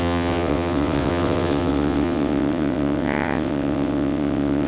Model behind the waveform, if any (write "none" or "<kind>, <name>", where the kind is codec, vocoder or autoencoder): vocoder, WaveNeXt